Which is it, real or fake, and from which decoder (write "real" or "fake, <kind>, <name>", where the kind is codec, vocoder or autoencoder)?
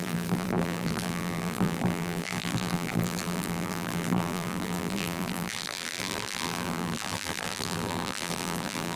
fake, vocoder, BigVGAN v2